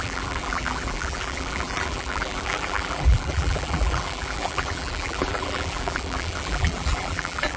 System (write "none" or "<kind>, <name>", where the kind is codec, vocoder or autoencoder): vocoder, BigVGAN v2